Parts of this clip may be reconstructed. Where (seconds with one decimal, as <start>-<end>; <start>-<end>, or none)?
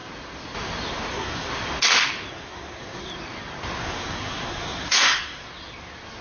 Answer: 1.1-1.5; 2.3-3.1; 3.8-5.5